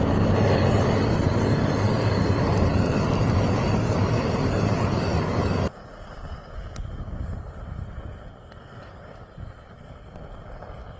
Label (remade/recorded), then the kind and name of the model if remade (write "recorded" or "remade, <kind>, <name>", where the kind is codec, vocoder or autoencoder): recorded